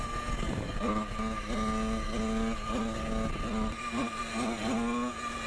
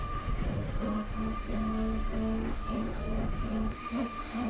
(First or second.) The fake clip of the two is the second